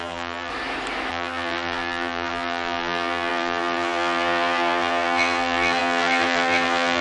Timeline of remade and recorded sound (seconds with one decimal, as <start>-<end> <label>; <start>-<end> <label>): 0.0-0.5 remade; 0.5-1.1 recorded; 1.1-7.0 remade